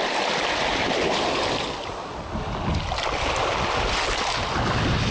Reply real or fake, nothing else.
real